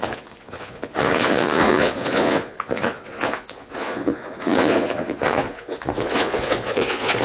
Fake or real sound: fake